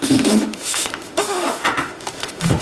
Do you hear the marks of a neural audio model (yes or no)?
yes